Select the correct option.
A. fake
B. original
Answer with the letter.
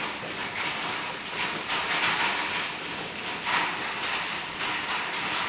B